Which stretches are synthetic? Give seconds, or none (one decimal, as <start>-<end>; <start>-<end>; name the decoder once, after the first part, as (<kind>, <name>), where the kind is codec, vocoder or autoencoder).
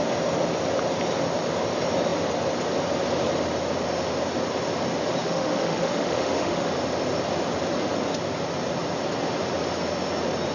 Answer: 5.2-6.7 (autoencoder, DAC-VAE)